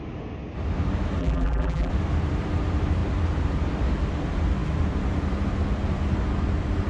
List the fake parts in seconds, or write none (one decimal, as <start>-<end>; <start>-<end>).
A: 1.2-1.9